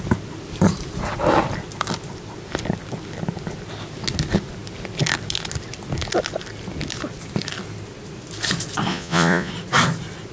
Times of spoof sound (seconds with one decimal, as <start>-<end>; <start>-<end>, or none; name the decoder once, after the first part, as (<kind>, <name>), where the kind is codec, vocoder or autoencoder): 8.9-9.5 (vocoder, Vocos)